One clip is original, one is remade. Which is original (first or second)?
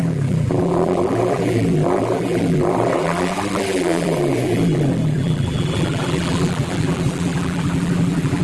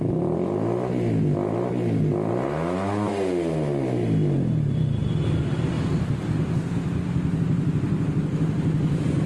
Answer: second